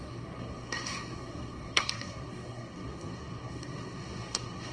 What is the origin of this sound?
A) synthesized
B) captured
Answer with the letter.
A